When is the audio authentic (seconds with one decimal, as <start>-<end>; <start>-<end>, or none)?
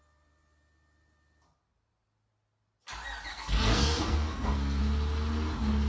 0.0-3.3; 4.8-5.9